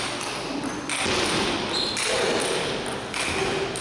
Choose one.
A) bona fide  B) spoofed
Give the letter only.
A